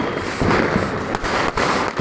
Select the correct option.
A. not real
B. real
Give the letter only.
B